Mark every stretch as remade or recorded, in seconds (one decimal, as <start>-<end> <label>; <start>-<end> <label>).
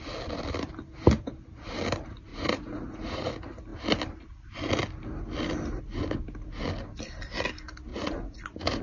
0.0-2.3 recorded; 2.3-3.3 remade; 3.3-7.9 recorded; 7.9-8.8 remade